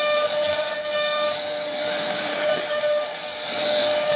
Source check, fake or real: fake